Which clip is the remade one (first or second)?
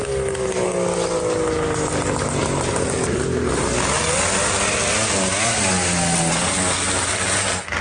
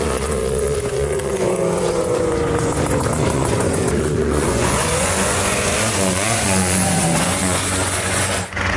second